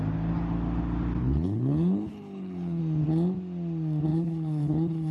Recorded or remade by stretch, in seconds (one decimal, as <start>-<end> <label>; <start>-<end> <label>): 0.0-1.2 recorded; 1.2-2.8 remade; 2.8-4.1 recorded; 4.1-5.1 remade